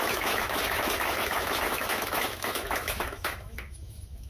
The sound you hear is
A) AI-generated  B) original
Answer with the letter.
A